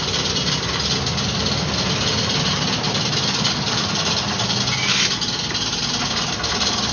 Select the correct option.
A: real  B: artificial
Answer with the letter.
A